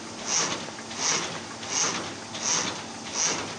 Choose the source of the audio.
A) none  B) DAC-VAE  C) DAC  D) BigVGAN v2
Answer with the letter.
A